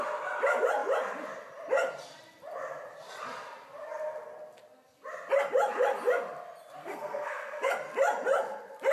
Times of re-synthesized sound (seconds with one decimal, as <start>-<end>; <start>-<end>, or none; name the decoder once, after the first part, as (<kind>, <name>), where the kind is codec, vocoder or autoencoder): 6.8-7.7 (codec, SNAC)